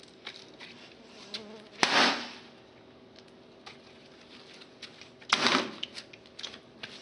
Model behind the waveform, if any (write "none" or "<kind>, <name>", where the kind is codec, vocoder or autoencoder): none